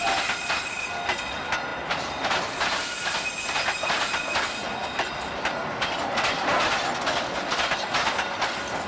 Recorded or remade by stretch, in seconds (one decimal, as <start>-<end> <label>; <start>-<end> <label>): 0.0-8.9 recorded